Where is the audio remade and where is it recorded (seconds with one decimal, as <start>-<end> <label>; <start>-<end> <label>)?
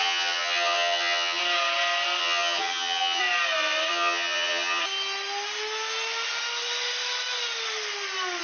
0.0-1.4 remade; 1.4-2.2 recorded; 2.2-3.2 remade; 3.2-3.9 recorded; 3.9-4.8 remade; 4.8-8.4 recorded